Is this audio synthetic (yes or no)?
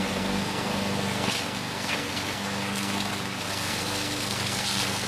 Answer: yes